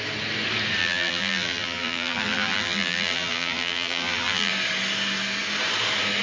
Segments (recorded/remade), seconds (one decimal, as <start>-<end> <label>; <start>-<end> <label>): 0.0-0.8 recorded; 0.8-4.5 remade; 4.5-6.2 recorded